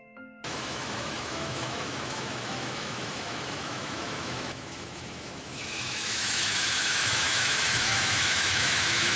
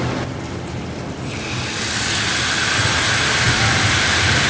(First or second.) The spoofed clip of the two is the first